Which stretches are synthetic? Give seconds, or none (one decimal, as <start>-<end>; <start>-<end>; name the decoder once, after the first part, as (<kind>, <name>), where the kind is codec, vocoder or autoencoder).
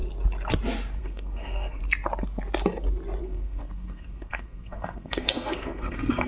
1.0-1.8 (codec, SNAC); 3.2-6.3